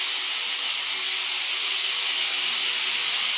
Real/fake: real